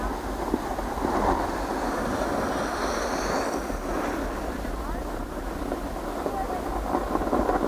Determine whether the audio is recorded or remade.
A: recorded